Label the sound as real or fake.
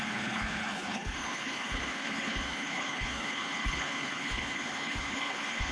fake